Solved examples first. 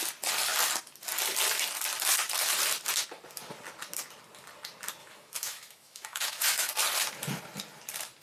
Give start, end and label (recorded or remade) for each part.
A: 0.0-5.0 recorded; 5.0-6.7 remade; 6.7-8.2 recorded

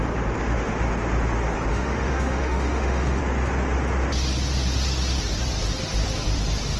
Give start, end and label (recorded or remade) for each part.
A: 0.0-1.7 recorded; 1.7-3.2 remade; 3.2-6.8 recorded

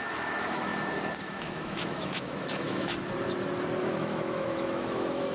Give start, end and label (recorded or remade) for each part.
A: 0.0-0.7 remade; 0.7-1.2 recorded; 1.2-2.9 remade; 2.9-3.8 recorded; 3.8-5.3 remade

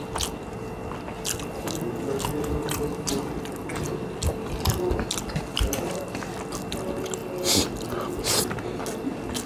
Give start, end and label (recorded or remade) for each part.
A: 0.0-9.5 recorded

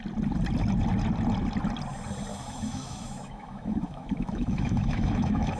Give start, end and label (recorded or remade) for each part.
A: 0.0-2.3 recorded; 2.3-5.6 remade

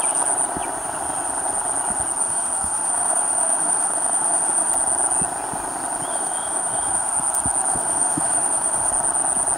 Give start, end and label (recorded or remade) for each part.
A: 0.0-2.2 recorded; 2.2-4.7 remade; 4.7-6.1 recorded; 6.1-7.1 remade; 7.1-7.7 recorded; 7.7-8.9 remade; 8.9-9.6 recorded

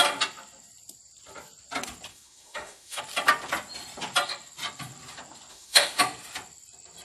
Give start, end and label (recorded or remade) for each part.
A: 0.0-2.1 recorded; 2.1-3.0 remade; 3.0-5.5 recorded; 5.5-6.0 remade; 6.0-7.0 recorded

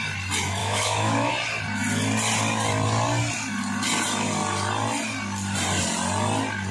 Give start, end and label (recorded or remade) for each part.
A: 0.0-0.6 recorded; 0.6-1.3 remade; 1.3-6.7 recorded